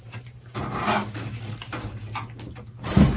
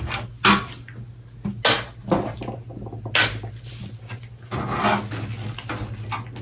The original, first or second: second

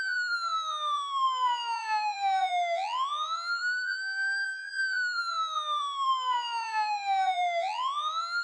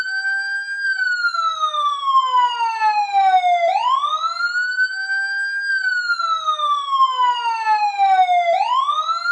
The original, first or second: second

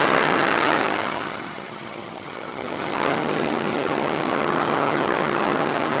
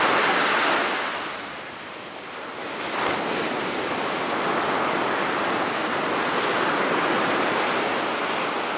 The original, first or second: second